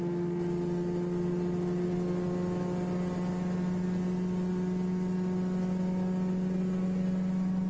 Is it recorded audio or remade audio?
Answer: recorded